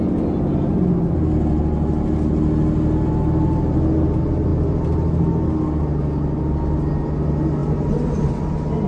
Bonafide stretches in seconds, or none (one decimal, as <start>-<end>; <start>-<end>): 0.0-8.9

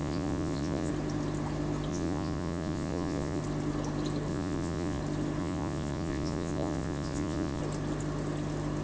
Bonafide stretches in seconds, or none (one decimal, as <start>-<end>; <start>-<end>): 0.9-1.9; 3.4-4.3; 5.0-5.4; 7.6-8.8

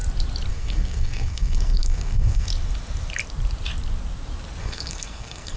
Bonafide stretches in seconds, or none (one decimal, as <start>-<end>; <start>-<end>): 0.0-0.5; 2.5-4.6